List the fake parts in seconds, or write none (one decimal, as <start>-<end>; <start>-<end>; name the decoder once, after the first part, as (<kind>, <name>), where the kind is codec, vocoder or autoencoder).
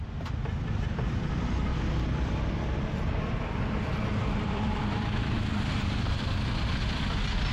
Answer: 1.7-6.2 (vocoder, BigVGAN v2)